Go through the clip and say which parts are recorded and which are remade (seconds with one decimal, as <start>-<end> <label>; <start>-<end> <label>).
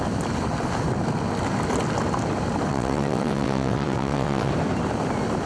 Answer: 0.0-2.7 recorded; 2.7-4.5 remade; 4.5-5.5 recorded